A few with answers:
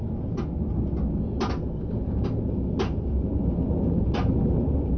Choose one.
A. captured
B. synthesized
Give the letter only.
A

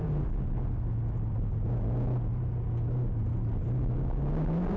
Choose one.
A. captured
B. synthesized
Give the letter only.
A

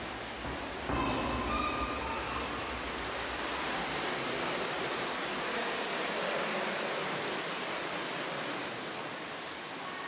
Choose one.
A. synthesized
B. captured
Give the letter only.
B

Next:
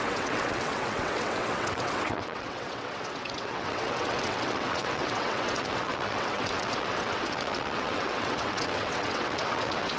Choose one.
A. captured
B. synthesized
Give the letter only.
B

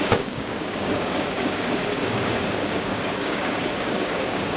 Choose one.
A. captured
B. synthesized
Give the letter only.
B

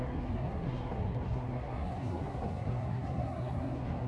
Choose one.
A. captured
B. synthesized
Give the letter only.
B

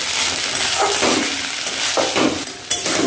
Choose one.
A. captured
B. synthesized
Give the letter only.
A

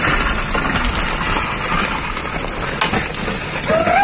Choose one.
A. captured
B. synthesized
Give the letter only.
A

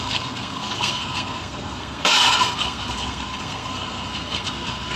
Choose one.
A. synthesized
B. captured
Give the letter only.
A